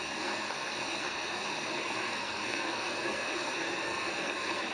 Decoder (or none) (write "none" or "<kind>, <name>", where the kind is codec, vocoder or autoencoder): codec, SNAC